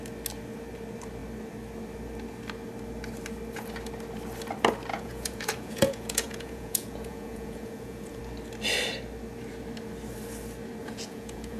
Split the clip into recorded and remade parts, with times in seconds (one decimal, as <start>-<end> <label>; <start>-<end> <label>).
0.0-4.9 recorded; 4.9-8.2 remade; 8.2-10.8 recorded; 10.8-11.6 remade